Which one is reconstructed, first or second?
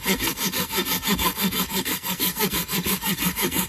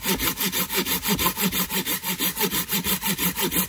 first